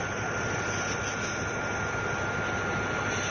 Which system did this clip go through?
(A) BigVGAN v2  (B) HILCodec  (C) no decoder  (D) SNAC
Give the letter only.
C